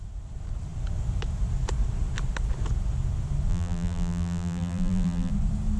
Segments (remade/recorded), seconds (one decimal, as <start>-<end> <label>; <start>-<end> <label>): 0.0-3.5 recorded; 3.5-5.3 remade; 5.3-5.8 recorded